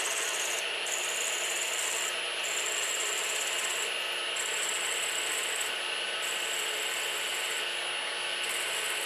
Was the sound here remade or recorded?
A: recorded